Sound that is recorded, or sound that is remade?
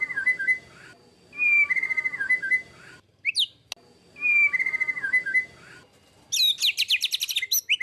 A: recorded